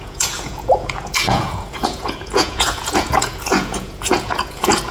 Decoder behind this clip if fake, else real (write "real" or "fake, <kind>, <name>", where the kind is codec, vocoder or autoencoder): fake, vocoder, Vocos